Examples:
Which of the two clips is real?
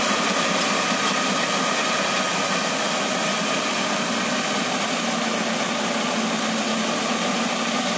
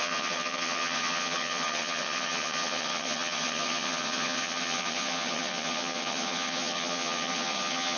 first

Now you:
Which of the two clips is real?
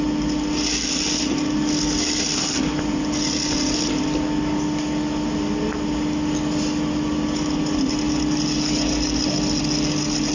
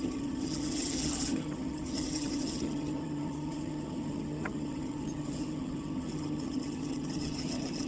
first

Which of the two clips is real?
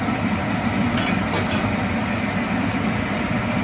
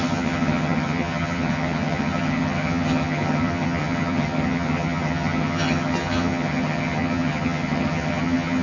first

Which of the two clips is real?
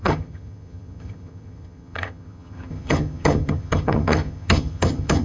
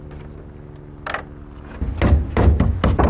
second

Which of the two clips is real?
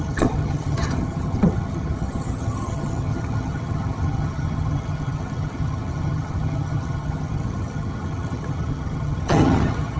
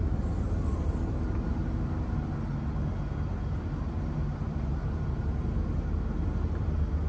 second